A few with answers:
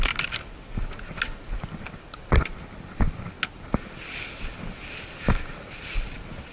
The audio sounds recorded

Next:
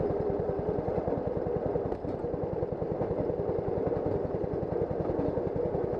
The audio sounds recorded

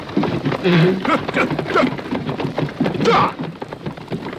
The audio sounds remade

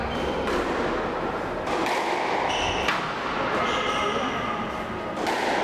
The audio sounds recorded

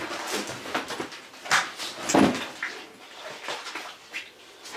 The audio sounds recorded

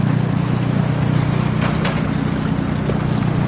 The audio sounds recorded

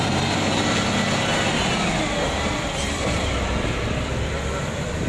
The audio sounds remade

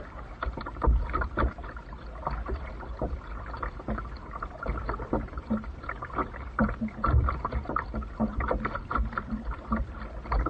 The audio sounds remade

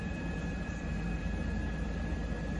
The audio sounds remade